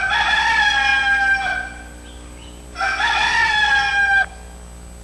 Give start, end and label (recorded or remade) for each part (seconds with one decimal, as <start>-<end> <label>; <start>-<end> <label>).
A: 0.0-5.0 recorded